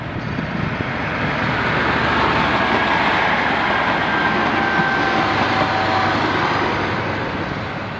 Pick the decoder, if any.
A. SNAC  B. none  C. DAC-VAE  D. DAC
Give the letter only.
B